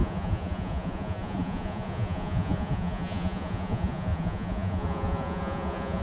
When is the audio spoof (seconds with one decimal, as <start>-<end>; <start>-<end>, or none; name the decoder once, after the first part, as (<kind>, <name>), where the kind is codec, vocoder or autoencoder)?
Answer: 0.0-6.0 (vocoder, Vocos)